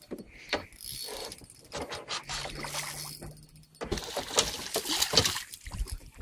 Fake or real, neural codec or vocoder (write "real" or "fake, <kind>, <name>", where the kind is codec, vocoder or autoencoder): real